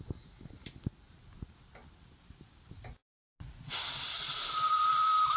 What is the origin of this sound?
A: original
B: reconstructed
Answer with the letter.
A